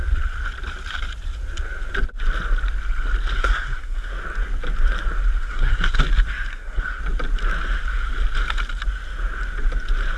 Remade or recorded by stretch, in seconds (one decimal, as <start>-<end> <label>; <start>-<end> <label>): 0.0-3.4 recorded; 3.4-4.1 remade; 4.1-5.4 recorded; 5.4-6.0 remade; 6.0-6.5 recorded; 6.5-7.0 remade; 7.0-10.2 recorded